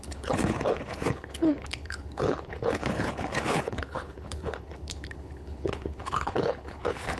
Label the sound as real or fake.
fake